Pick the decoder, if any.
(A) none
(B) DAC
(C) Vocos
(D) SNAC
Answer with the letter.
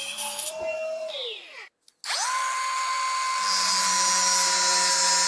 A